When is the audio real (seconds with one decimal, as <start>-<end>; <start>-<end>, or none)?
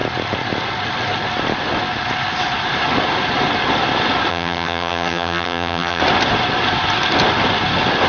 0.0-4.3; 6.0-8.1